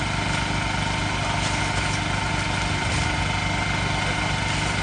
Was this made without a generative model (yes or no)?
yes